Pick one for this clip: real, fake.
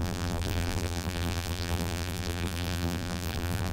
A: fake